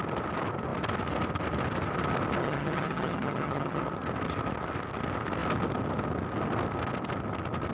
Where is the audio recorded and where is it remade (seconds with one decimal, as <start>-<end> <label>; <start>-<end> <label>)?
0.0-2.4 recorded; 2.4-3.8 remade; 3.8-7.7 recorded